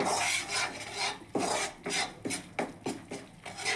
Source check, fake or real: real